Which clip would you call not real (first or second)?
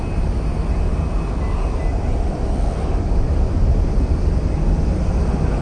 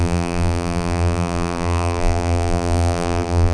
second